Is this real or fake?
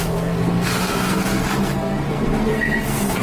fake